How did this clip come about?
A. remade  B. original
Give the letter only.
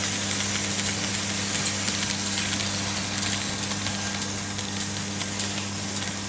B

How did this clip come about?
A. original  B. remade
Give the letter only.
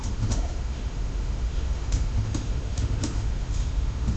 B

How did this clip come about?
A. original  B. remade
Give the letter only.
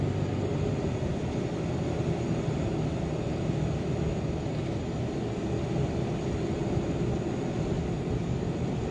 A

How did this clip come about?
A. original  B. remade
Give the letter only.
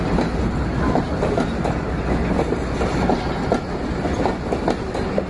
A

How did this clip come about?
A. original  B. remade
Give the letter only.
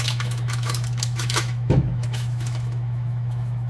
B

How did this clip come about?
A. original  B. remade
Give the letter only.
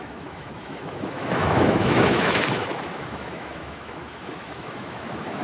B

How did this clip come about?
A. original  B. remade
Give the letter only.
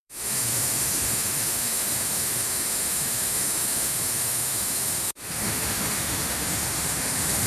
B